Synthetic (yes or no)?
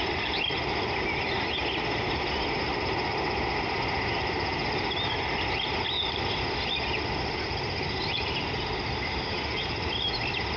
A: no